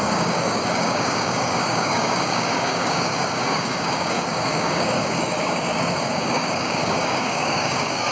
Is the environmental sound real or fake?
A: fake